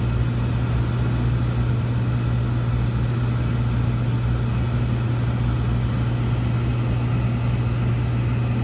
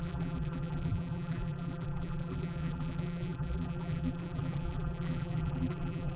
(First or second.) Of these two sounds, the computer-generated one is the second